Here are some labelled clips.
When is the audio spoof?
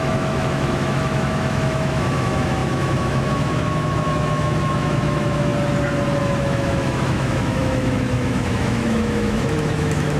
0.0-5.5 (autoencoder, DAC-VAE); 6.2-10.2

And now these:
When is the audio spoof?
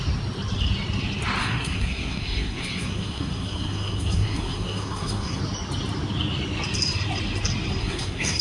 1.4-5.4 (codec, SNAC); 7.8-8.4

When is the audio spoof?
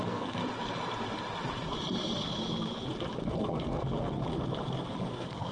0.0-0.4 (codec, SNAC); 3.3-4.2; 5.0-5.5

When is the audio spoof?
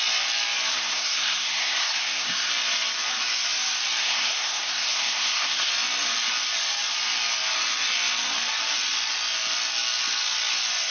0.7-2.5 (codec, SNAC); 4.0-5.7